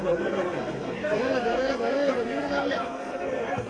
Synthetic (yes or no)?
yes